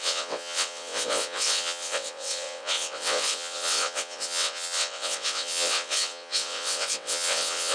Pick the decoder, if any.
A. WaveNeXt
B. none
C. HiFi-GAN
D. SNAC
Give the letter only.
A